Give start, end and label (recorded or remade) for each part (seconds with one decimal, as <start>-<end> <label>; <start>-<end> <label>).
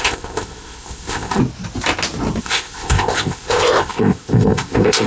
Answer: 0.0-1.4 remade; 1.4-2.4 recorded; 2.4-5.1 remade